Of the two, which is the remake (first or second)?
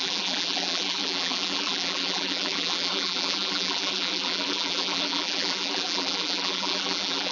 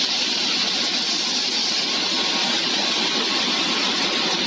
first